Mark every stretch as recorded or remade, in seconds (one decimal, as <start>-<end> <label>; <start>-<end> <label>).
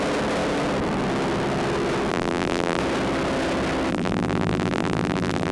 0.0-2.1 recorded; 2.1-2.8 remade; 2.8-3.9 recorded; 3.9-5.5 remade